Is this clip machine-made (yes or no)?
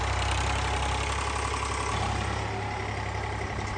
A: no